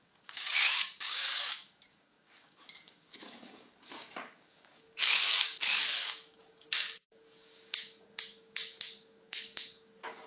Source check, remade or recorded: remade